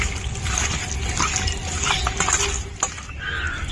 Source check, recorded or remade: recorded